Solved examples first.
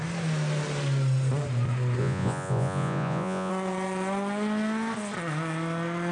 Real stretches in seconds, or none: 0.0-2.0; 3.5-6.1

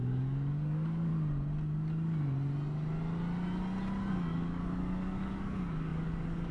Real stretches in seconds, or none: 1.1-4.1